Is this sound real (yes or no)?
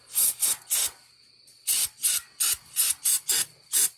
yes